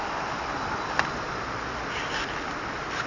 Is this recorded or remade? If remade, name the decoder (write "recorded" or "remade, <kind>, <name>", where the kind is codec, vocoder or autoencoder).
recorded